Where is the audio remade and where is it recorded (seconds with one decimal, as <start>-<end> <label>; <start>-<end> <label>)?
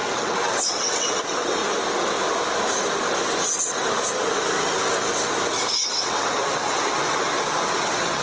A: 0.0-1.6 remade; 1.6-6.0 recorded; 6.0-8.2 remade